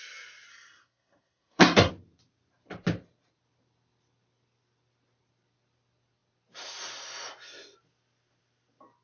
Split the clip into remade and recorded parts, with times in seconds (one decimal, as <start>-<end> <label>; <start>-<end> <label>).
0.0-0.5 recorded; 0.5-1.9 remade; 1.9-9.0 recorded